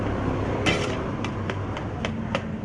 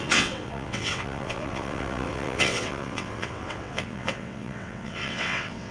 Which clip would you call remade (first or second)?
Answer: second